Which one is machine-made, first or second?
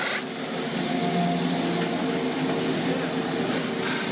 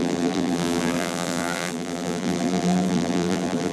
second